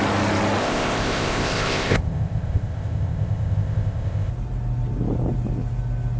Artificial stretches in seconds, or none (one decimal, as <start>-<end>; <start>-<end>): 0.6-4.3

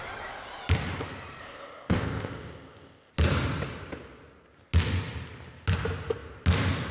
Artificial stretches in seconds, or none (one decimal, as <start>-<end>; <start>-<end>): 1.4-3.1